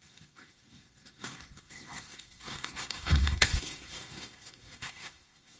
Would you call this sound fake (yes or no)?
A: yes